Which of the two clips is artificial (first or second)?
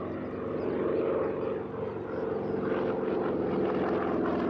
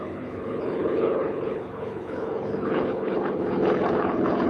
second